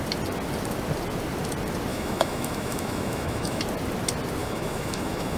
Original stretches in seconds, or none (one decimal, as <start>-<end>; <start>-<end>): 0.0-1.9; 3.6-4.4